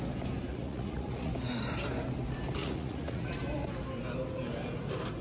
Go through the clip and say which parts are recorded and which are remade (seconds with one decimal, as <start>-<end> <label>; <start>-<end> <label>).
0.0-0.5 recorded; 0.5-1.3 remade; 1.3-2.6 recorded; 2.6-3.3 remade; 3.3-5.2 recorded